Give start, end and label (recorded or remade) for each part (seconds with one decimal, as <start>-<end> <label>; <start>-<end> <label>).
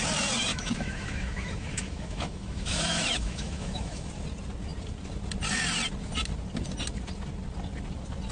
0.0-0.5 recorded; 0.5-4.1 remade; 4.1-8.3 recorded